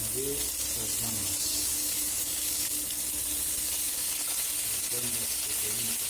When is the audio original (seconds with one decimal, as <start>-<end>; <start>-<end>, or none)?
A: 0.0-1.5; 3.0-3.6; 4.1-6.1